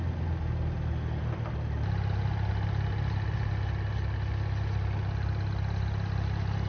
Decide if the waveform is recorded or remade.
recorded